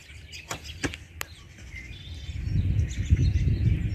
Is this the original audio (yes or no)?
yes